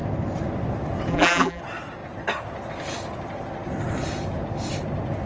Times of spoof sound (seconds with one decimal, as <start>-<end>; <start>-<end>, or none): 1.1-1.6